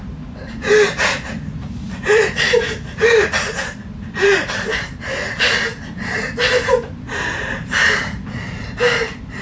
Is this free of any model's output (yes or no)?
no